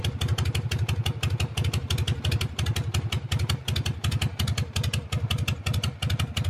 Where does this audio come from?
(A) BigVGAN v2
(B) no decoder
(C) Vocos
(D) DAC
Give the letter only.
B